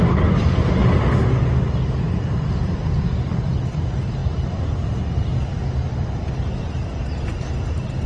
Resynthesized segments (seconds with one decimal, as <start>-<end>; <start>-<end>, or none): none